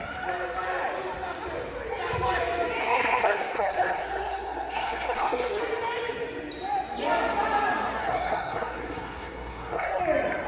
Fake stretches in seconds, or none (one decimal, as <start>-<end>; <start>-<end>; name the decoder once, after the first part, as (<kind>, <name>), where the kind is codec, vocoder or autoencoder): 2.8-5.6 (codec, SNAC); 8.0-10.0